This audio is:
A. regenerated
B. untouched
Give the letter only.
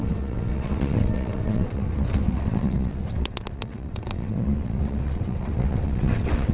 A